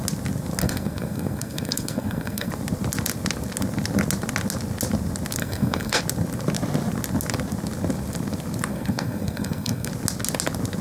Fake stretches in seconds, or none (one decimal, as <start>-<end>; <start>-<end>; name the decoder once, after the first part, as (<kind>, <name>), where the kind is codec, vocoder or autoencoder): 0.6-2.5 (codec, SNAC); 5.4-6.0; 8.7-9.9